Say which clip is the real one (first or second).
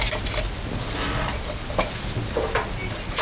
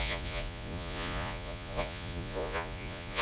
first